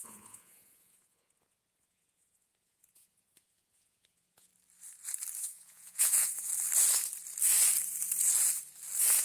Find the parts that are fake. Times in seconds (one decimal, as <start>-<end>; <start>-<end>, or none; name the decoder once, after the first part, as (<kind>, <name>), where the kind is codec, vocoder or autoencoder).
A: 0.0-4.5 (vocoder, Vocos); 5.4-6.5